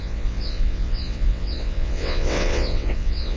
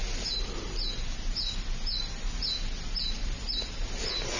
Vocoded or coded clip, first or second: first